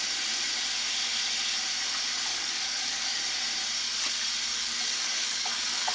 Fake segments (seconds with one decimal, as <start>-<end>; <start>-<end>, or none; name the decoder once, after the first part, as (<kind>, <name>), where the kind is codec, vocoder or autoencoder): 2.3-3.2 (codec, DAC); 4.5-5.9